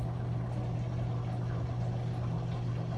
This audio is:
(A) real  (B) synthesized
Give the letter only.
A